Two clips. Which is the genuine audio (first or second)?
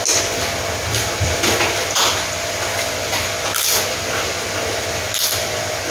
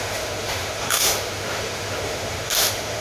first